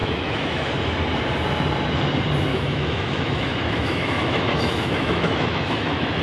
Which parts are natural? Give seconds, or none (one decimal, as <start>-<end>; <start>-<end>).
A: 0.7-2.5